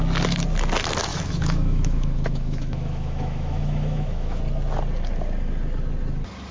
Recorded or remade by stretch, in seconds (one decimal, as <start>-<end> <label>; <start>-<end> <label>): 0.0-1.1 recorded; 1.1-4.4 remade; 4.4-6.5 recorded